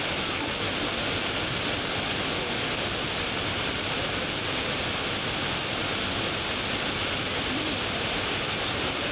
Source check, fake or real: real